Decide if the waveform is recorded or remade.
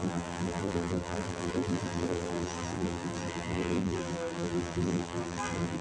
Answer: remade